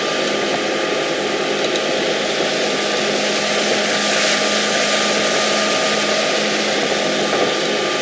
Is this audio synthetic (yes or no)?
no